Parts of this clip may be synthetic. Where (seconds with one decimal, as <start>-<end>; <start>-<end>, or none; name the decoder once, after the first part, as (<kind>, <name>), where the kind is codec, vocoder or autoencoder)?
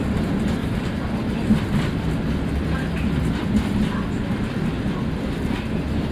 0.6-1.1 (vocoder, BigVGAN v2)